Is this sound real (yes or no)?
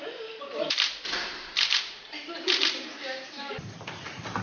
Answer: no